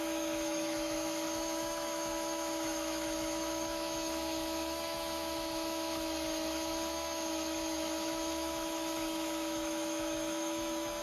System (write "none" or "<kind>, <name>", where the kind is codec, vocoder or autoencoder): autoencoder, DAC-VAE